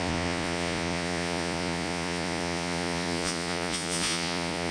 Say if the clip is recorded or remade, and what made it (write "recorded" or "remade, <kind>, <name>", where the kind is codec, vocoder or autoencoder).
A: remade, vocoder, Vocos